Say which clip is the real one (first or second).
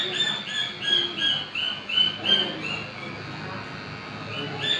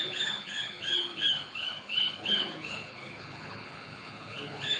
first